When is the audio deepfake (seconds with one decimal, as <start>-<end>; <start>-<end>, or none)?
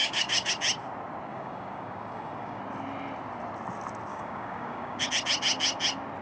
0.0-0.5; 1.3-2.6; 4.1-5.0